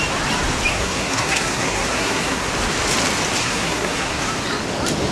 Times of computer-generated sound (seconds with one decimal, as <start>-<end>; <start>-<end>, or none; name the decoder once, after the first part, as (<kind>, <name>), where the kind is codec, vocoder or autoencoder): 0.7-2.5 (codec, SNAC); 3.4-4.2